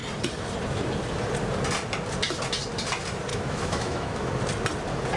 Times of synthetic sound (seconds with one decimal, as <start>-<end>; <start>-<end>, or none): 3.3-4.3